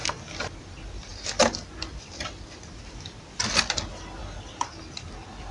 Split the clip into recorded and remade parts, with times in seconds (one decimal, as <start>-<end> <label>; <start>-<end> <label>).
0.0-5.5 recorded